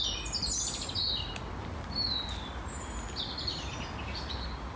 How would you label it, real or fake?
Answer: real